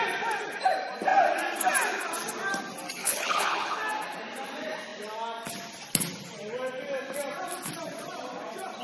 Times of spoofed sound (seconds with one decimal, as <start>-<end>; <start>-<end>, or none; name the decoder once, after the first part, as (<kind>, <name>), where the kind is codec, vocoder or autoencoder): 3.0-3.8 (codec, HILCodec)